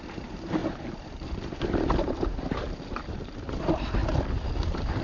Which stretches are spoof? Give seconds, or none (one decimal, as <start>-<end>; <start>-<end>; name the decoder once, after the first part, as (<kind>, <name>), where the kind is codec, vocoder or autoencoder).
0.6-3.6 (vocoder, BigVGAN v2); 4.0-5.0